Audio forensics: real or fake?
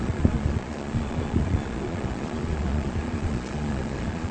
fake